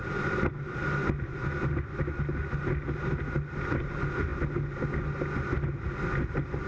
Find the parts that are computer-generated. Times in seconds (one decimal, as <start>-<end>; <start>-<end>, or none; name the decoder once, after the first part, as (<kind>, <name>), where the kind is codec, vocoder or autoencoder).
0.0-0.5 (vocoder, BigVGAN v2)